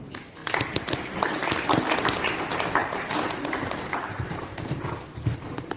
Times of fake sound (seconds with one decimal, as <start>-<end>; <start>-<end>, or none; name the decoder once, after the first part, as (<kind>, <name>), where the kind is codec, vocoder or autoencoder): 2.8-4.8 (vocoder, BigVGAN v2)